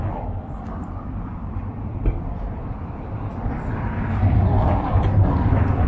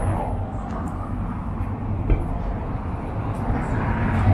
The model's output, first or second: first